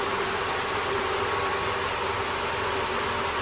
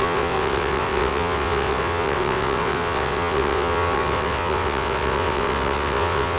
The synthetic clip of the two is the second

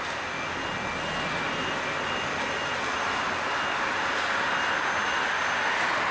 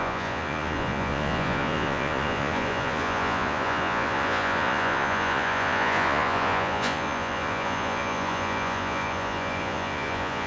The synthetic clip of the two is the second